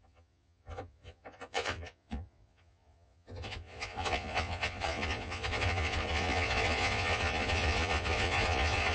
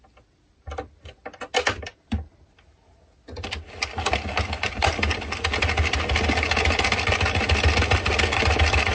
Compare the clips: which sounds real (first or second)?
second